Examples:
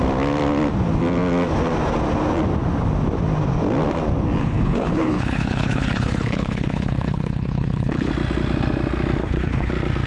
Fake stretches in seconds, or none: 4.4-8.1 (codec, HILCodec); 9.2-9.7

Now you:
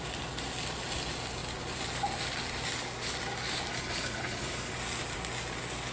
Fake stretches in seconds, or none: 3.7-4.7 (codec, HILCodec)

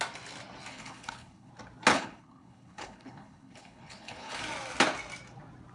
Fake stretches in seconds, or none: 0.7-1.5 (codec, HILCodec); 1.9-4.4